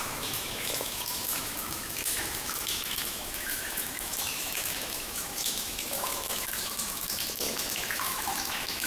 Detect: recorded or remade remade